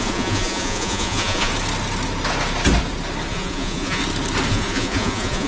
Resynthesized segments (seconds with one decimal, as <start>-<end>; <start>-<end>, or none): 0.0-1.5; 3.3-4.0; 4.5-5.5